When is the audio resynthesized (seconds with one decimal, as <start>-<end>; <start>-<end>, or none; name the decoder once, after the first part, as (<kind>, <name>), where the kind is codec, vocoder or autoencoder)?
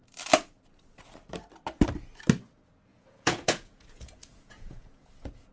2.9-5.5 (vocoder, Vocos)